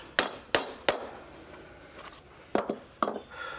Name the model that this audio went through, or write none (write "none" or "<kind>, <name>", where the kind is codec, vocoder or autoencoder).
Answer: none